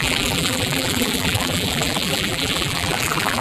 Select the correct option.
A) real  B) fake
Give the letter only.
B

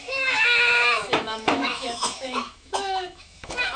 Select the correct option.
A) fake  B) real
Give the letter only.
A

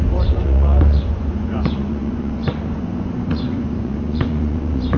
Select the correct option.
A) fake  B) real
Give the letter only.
A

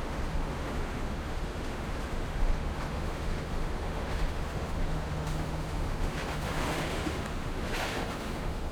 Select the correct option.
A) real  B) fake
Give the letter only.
B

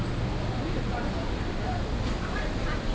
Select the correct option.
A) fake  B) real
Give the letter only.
B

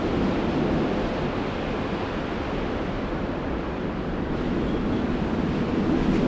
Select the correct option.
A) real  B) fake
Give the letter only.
A